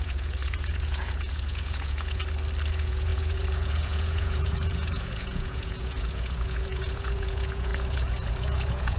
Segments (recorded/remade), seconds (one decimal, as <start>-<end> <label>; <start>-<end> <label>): 0.0-2.2 remade; 2.2-2.7 recorded; 2.7-9.0 remade